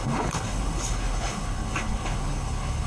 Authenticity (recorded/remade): remade